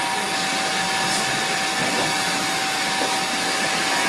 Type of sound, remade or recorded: recorded